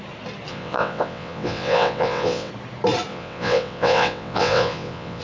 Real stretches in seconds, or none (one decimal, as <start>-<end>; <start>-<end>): 0.0-0.5; 2.5-3.1